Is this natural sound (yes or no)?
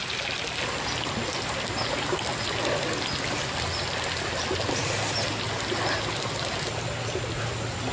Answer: yes